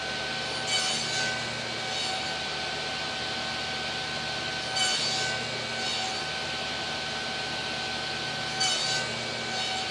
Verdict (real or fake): real